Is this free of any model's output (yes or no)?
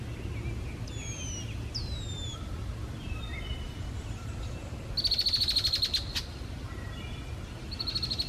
yes